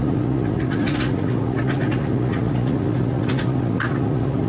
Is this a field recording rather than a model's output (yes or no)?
no